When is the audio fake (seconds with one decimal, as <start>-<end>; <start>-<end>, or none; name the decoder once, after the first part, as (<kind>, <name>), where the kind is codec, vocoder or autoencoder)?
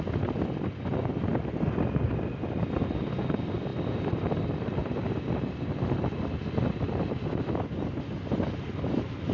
none